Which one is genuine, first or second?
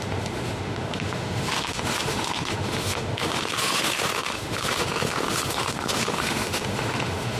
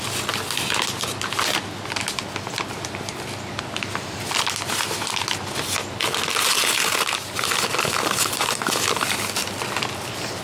second